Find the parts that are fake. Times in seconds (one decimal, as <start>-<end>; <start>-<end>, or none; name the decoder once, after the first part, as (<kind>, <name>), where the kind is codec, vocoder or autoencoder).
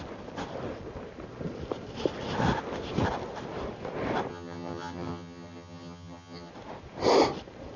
4.3-6.5 (vocoder, HiFi-GAN)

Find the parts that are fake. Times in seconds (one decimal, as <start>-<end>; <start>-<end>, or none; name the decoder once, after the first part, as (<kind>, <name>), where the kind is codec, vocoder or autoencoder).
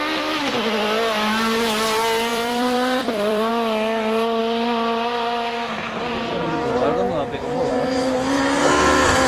2.3-3.5 (vocoder, BigVGAN v2)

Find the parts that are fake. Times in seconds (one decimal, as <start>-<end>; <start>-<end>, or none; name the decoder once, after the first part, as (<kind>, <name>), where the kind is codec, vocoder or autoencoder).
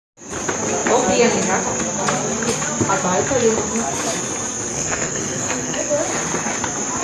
4.7-5.9 (codec, SNAC)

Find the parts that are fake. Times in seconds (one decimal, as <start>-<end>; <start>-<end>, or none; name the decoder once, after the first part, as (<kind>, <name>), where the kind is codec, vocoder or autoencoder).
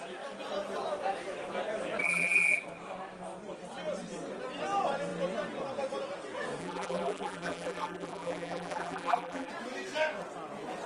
2.0-2.6 (vocoder, BigVGAN v2); 6.6-9.5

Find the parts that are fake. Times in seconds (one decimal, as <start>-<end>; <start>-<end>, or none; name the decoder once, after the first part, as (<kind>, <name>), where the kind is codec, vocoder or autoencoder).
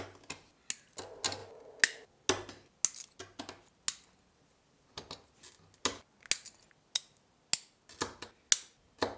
none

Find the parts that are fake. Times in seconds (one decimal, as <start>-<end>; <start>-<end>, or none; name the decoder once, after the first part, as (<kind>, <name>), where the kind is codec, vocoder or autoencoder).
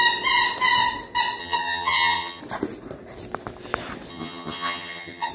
1.4-2.4 (vocoder, HiFi-GAN); 4.1-5.3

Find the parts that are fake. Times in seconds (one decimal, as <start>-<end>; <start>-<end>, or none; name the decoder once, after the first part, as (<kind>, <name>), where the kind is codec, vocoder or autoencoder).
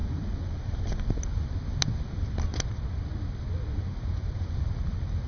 0.0-1.2 (vocoder, BigVGAN v2); 3.9-4.6